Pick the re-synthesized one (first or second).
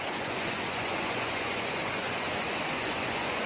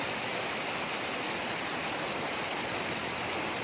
first